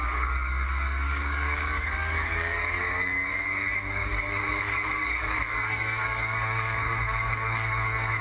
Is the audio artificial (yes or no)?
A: yes